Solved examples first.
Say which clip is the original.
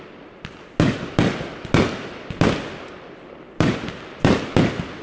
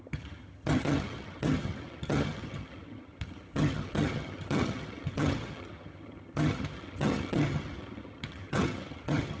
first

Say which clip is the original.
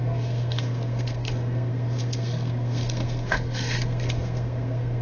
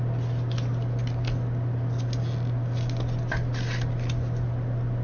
second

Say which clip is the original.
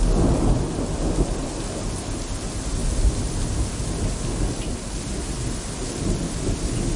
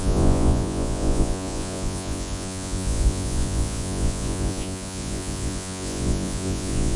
first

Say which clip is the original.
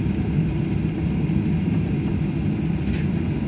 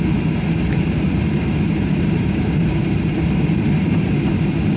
first